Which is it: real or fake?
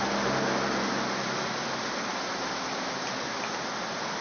real